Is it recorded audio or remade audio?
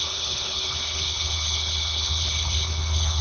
remade